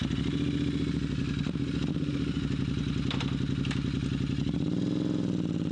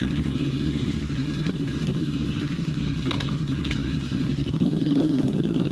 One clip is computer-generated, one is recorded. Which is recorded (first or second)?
first